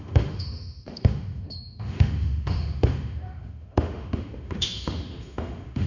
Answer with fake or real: fake